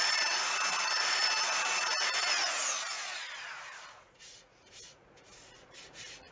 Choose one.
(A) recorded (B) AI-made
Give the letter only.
B